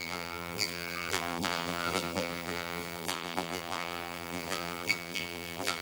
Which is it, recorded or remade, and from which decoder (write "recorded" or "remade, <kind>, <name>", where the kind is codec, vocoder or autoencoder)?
remade, vocoder, BigVGAN v2